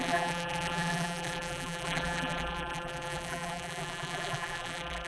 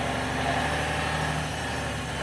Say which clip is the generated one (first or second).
first